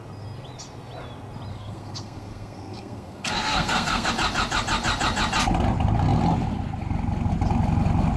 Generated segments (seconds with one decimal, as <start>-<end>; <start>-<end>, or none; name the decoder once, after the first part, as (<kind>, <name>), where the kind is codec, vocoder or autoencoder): 1.5-4.1 (codec, SNAC)